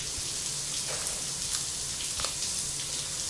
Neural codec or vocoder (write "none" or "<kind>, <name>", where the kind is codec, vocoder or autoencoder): none